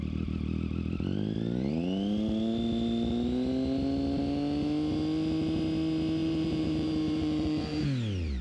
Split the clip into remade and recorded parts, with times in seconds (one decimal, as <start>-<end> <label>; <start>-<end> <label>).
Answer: 0.0-6.2 recorded; 6.2-7.8 remade; 7.8-8.4 recorded